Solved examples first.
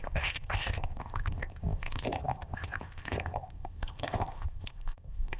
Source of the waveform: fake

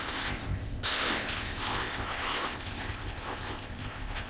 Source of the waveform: fake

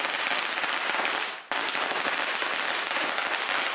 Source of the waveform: real